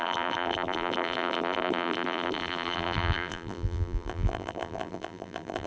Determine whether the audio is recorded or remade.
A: remade